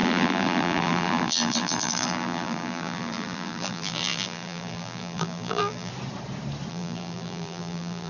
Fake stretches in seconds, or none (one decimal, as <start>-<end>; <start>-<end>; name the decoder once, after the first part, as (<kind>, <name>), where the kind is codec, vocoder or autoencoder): 0.0-5.9 (vocoder, BigVGAN v2); 6.7-8.1